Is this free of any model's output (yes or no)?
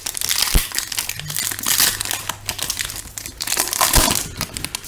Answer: yes